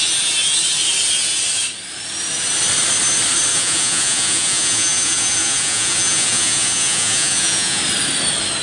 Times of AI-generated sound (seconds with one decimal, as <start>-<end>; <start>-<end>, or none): 3.5-7.8